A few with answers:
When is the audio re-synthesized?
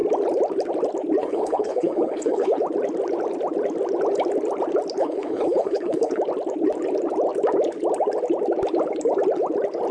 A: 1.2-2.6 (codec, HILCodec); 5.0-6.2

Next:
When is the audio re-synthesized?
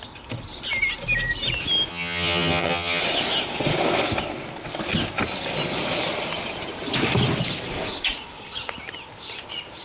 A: 1.9-3.0 (vocoder, HiFi-GAN)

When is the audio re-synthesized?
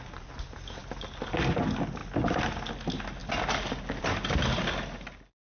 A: none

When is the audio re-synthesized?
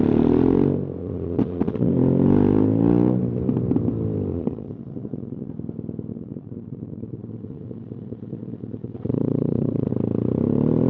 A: 1.0-1.9 (vocoder, Vocos); 4.3-5.5; 6.1-9.9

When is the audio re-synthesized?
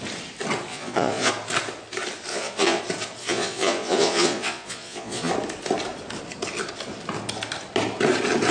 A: 0.7-1.3 (vocoder, Vocos); 2.3-2.8; 3.2-5.3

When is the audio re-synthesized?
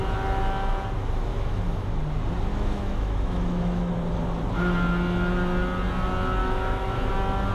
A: 1.3-2.0 (autoencoder, DAC-VAE); 2.5-3.9; 6.4-7.1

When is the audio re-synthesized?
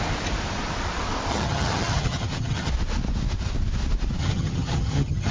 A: 1.3-2.7 (vocoder, HiFi-GAN); 4.2-5.3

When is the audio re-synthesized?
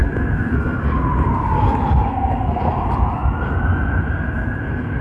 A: 0.0-0.8 (codec, SNAC); 2.1-2.7